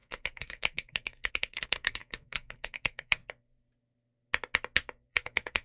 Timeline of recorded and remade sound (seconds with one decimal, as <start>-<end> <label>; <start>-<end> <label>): 0.0-3.2 remade; 3.2-5.1 recorded; 5.1-5.6 remade